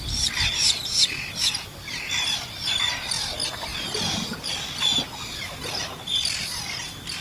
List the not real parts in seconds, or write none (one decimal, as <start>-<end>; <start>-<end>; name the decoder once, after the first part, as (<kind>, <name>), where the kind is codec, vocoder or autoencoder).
none